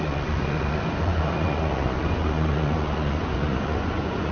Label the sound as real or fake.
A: fake